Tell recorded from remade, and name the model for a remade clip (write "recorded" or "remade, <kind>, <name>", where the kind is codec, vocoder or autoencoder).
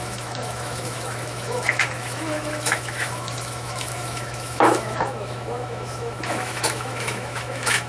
remade, autoencoder, DAC-VAE